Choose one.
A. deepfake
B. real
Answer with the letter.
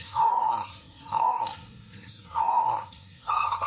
A